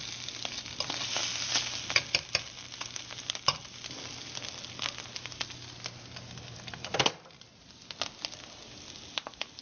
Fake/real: real